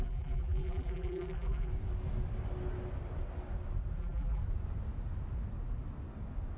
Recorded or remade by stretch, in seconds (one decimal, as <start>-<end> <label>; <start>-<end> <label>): 0.0-1.7 remade; 1.7-4.0 recorded; 4.0-4.4 remade; 4.4-6.6 recorded